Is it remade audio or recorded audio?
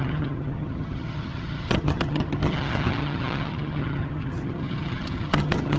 remade